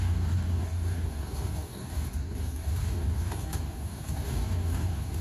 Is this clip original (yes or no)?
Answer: no